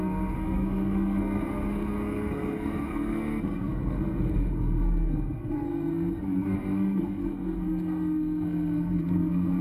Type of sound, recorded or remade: remade